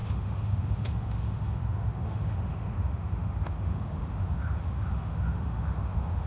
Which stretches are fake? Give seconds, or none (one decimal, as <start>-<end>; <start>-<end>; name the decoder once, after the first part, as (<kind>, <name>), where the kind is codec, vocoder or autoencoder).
0.0-6.3 (autoencoder, DAC-VAE)